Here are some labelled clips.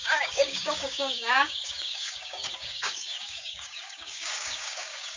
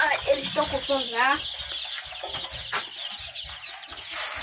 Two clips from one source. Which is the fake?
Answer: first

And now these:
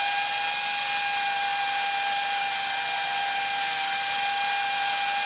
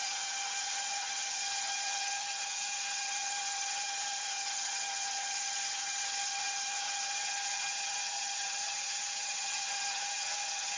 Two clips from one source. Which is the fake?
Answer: second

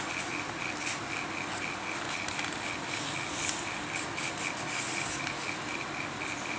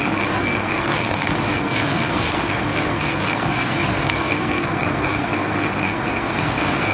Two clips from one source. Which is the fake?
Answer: second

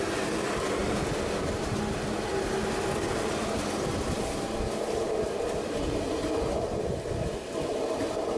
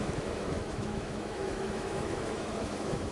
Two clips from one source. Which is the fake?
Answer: second